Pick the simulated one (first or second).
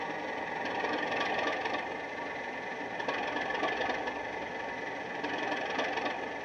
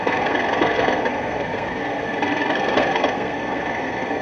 second